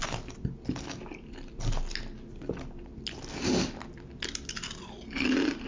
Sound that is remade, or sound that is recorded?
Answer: recorded